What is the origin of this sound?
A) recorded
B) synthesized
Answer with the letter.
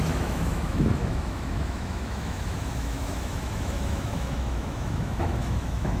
B